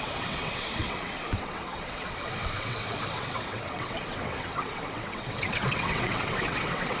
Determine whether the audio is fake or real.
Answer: fake